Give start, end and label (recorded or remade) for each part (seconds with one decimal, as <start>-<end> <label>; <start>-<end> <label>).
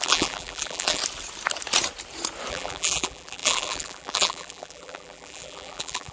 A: 0.0-1.0 remade; 1.0-2.5 recorded; 2.5-6.1 remade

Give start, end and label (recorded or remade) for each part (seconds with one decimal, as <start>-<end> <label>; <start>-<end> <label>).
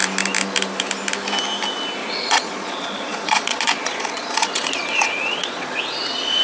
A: 0.0-2.0 recorded; 2.0-5.8 remade; 5.8-6.4 recorded